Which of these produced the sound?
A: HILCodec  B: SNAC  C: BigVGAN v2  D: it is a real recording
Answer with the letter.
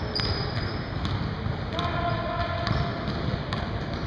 D